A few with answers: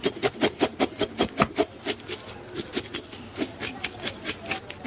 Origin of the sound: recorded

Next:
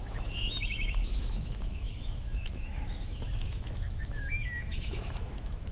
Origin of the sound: remade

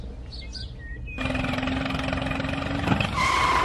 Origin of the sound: recorded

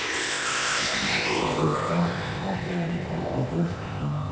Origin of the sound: remade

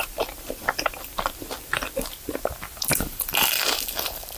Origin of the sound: remade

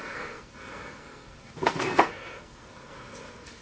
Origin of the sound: remade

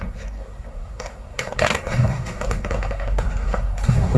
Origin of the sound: remade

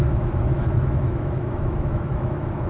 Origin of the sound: remade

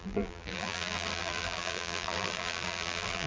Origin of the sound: remade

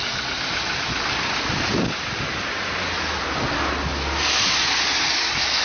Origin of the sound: recorded